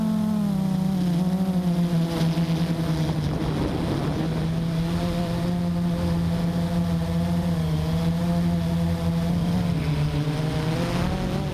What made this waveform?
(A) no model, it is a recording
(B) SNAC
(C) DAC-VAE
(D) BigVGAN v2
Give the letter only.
A